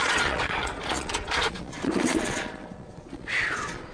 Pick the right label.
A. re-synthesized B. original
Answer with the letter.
A